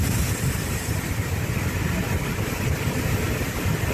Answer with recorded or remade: recorded